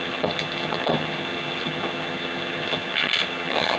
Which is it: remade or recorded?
remade